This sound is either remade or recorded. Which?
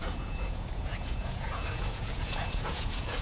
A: remade